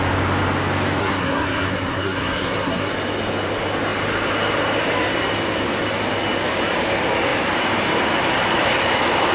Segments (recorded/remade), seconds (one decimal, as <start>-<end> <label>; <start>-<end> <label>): 0.0-1.0 recorded; 1.0-2.9 remade; 2.9-9.3 recorded